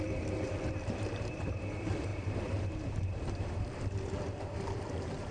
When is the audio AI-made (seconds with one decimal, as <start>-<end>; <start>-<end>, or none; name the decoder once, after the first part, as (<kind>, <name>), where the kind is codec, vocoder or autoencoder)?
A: 0.0-5.3 (vocoder, BigVGAN v2)